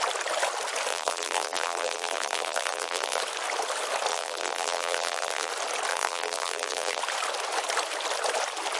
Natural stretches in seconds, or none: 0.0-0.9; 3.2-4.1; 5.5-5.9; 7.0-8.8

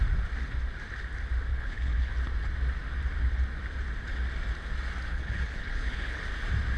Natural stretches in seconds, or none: 0.0-1.5; 2.1-5.1; 6.2-6.8

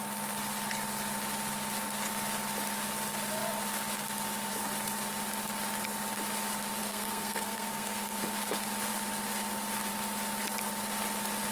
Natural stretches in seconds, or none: 0.0-6.8; 8.2-11.5

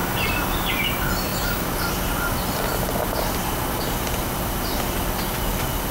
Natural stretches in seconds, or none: 0.0-5.9

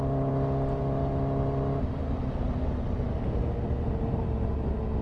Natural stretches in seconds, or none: 0.0-5.0